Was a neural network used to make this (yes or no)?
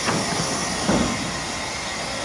no